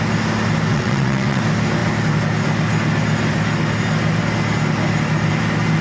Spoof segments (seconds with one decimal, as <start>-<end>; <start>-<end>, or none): 0.7-1.4